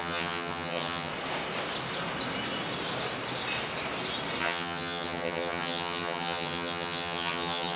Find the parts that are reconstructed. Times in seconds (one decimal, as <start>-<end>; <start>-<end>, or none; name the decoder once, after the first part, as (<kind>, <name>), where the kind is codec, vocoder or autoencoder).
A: 0.0-1.1 (vocoder, HiFi-GAN); 4.4-7.8